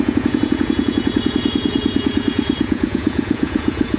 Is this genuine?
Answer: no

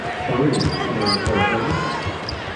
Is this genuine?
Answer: yes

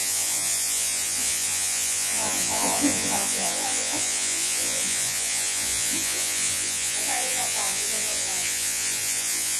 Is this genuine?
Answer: no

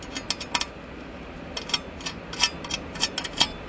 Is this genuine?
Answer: yes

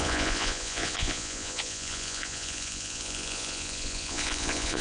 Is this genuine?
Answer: no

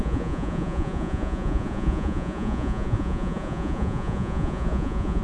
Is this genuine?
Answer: no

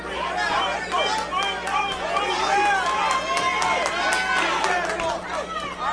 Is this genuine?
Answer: yes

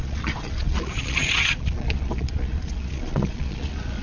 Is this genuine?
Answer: no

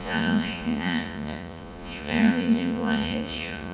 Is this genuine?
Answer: no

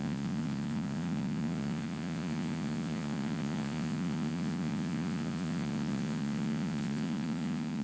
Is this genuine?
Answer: no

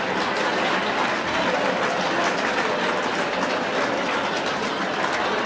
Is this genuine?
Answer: yes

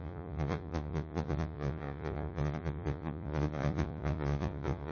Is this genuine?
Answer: no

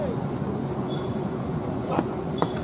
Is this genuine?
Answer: no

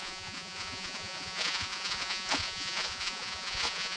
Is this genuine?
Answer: no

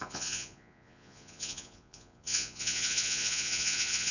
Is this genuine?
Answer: no